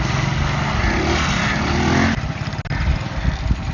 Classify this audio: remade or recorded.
recorded